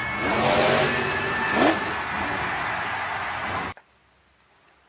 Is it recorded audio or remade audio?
recorded